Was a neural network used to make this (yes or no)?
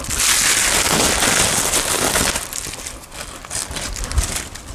no